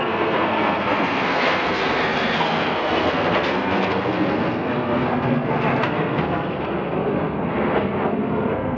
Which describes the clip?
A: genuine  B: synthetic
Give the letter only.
B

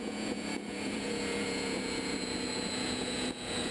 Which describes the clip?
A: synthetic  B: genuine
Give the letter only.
A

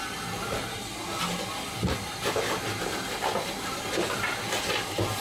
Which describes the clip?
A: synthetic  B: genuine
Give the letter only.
B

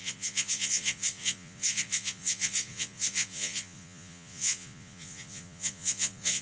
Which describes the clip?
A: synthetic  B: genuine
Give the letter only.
A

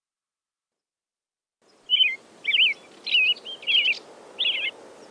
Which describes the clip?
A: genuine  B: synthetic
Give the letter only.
A